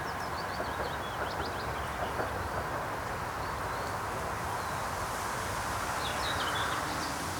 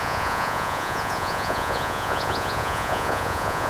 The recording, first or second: first